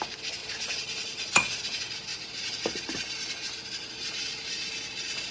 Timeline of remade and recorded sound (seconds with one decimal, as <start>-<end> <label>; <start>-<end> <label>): 0.0-0.4 recorded; 0.4-1.6 remade; 1.6-5.3 recorded